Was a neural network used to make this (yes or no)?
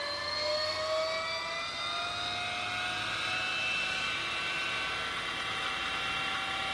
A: no